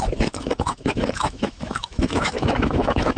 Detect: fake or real fake